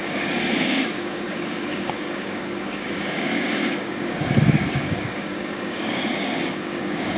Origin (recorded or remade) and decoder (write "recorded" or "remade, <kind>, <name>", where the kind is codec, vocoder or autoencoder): remade, codec, DAC